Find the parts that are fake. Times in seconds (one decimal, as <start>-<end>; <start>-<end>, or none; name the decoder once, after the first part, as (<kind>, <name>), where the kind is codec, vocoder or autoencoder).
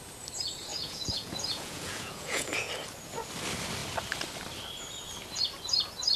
0.7-2.7 (vocoder, Vocos)